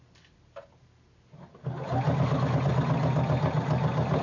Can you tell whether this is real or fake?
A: real